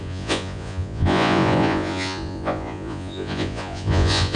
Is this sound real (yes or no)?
no